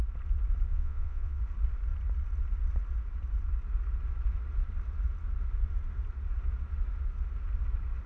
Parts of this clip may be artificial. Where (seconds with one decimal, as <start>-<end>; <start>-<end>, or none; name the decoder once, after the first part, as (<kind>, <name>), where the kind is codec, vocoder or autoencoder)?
0.7-1.4 (vocoder, Vocos)

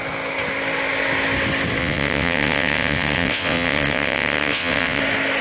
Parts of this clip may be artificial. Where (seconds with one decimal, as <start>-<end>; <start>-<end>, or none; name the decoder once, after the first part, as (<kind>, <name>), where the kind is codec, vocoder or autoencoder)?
1.8-5.0 (vocoder, WaveNeXt)

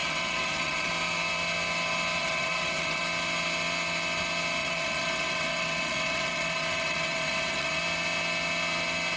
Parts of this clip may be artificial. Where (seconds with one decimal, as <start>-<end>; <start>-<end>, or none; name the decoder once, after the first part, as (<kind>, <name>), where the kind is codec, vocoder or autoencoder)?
0.0-0.9 (vocoder, WaveNeXt); 2.2-3.0; 4.6-7.8

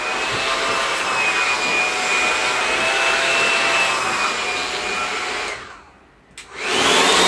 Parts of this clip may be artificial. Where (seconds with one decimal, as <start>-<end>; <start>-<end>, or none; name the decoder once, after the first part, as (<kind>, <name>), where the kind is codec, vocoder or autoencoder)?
none

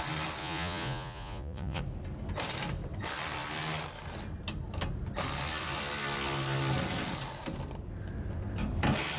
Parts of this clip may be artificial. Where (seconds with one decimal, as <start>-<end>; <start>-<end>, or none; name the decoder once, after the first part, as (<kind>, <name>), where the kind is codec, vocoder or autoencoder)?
0.4-1.8 (vocoder, Vocos)

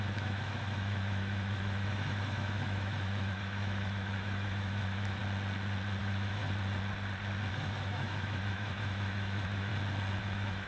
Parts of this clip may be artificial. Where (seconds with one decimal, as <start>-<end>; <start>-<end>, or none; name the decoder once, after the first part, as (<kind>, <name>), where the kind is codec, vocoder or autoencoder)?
0.0-5.2 (autoencoder, DAC-VAE); 6.0-6.4; 7.5-9.7; 10.2-10.7

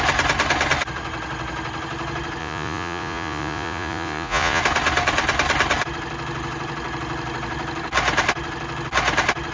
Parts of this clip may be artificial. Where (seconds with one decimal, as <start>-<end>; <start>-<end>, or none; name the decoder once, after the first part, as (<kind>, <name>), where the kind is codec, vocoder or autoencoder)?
2.4-4.6 (vocoder, Vocos)